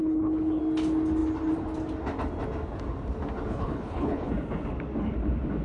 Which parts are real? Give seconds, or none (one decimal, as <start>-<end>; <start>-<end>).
0.6-3.5; 4.3-5.6